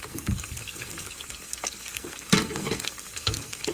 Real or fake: fake